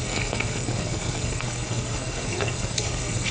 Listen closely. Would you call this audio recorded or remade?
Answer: remade